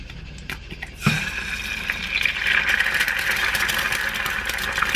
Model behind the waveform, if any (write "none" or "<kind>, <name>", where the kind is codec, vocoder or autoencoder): none